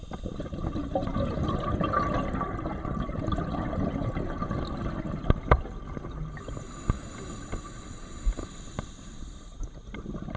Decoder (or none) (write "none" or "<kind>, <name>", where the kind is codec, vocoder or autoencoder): none